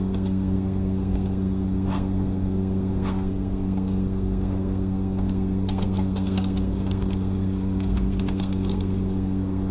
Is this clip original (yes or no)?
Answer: no